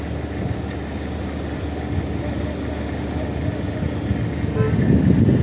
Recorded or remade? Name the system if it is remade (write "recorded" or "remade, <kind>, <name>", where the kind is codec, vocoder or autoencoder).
recorded